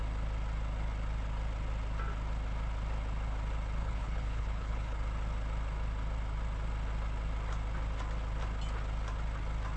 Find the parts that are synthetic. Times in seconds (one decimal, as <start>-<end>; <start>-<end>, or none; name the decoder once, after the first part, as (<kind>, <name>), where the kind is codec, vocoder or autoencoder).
3.8-5.0 (codec, HILCodec)